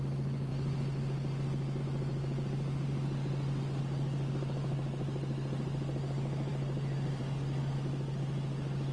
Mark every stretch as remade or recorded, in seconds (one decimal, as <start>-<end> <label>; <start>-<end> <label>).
0.0-8.9 recorded